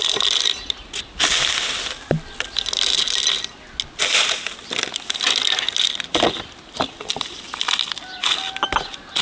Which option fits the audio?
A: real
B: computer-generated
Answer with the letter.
A